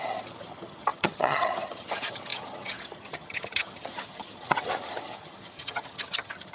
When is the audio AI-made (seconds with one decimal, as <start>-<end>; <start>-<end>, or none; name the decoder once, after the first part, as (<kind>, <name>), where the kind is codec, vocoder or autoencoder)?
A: 0.0-6.5 (vocoder, HiFi-GAN)